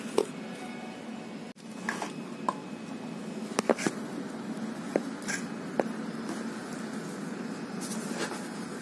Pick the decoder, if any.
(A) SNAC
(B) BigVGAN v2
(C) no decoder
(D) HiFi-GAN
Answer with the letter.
C